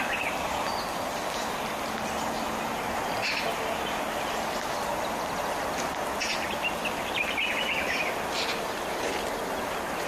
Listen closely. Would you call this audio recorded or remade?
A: recorded